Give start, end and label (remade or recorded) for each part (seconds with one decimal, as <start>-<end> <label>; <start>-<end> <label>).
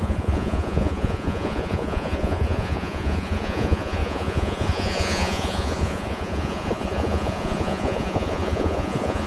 0.0-9.3 remade